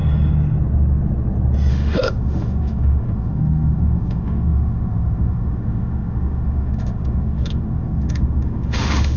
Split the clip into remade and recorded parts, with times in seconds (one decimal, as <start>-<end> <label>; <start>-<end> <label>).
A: 0.0-1.7 recorded; 1.7-9.2 remade